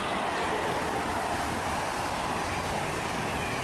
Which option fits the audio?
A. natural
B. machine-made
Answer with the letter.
A